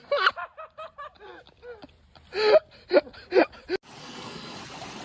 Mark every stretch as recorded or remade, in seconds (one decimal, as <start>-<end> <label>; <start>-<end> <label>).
0.0-4.0 recorded; 4.0-4.6 remade; 4.6-5.0 recorded